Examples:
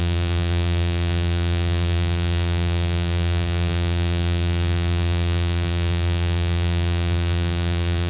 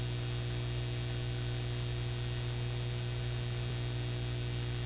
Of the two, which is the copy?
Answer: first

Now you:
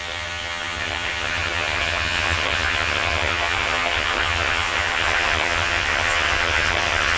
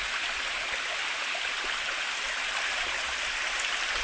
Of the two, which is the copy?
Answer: first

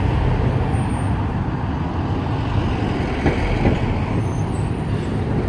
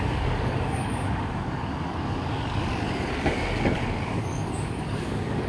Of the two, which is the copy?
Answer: second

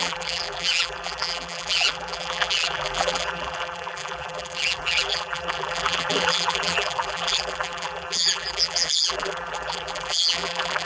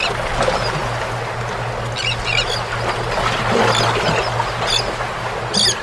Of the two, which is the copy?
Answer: first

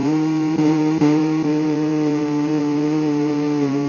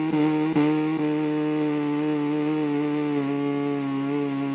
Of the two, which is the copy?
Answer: first